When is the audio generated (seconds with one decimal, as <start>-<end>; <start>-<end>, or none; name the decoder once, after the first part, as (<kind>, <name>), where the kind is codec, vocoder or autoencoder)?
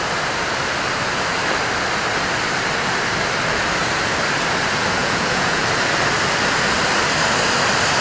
5.0-5.6 (vocoder, Vocos)